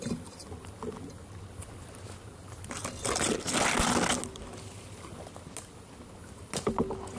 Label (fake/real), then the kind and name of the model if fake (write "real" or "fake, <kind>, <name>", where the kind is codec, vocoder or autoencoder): real